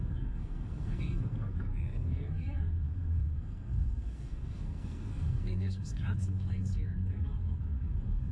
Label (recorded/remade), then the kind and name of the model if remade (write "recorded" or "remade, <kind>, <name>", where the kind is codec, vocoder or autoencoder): remade, codec, SNAC